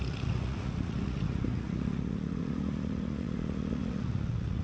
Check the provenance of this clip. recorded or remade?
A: remade